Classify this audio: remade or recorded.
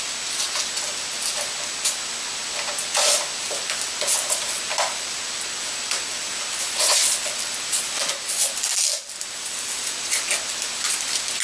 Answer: recorded